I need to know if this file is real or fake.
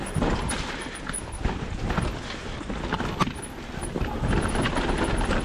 real